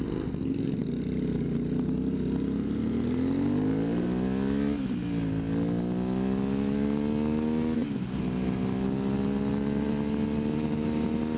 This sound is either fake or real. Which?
real